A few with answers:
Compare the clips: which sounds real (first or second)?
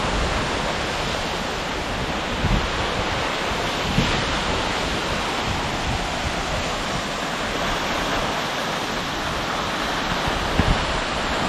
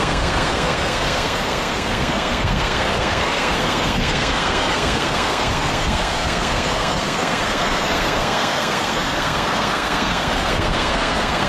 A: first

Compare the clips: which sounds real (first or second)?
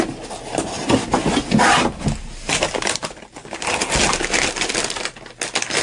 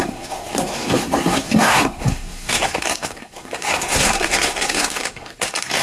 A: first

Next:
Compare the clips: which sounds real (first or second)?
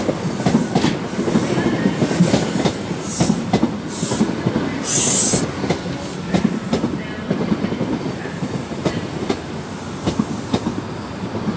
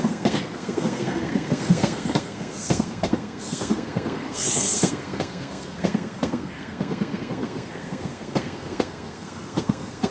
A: first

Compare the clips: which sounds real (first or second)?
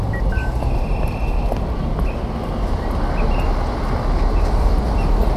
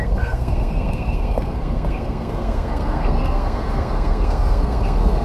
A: first